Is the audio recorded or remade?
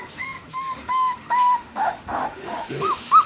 remade